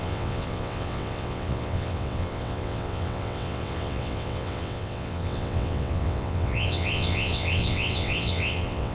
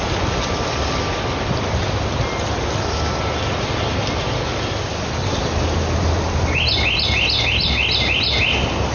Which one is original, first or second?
second